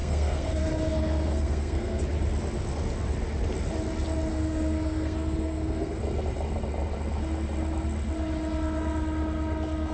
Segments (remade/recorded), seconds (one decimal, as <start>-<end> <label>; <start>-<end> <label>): 0.0-2.0 remade; 2.0-4.3 recorded; 4.3-6.0 remade; 6.0-9.9 recorded